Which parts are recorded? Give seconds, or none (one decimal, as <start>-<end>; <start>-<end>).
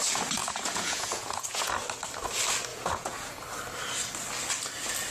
0.0-0.4; 1.7-2.7; 3.4-5.1